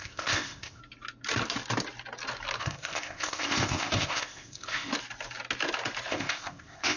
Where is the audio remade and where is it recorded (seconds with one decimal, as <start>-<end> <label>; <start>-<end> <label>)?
0.0-0.8 remade; 0.8-2.6 recorded; 2.6-4.9 remade; 4.9-6.1 recorded; 6.1-7.0 remade